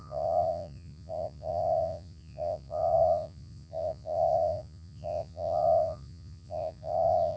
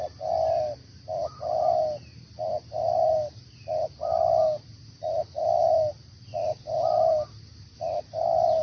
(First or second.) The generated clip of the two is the first